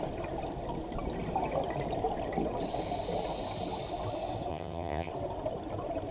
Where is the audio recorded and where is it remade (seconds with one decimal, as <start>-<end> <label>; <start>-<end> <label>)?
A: 0.0-4.5 recorded; 4.5-5.1 remade; 5.1-6.1 recorded